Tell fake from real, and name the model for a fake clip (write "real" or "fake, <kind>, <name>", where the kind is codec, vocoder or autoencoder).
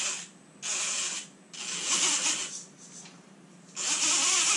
real